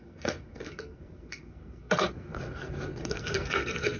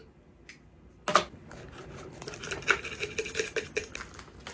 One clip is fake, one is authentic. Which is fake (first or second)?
first